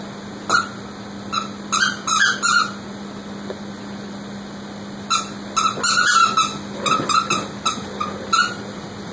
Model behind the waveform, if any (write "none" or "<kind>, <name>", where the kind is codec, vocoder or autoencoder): none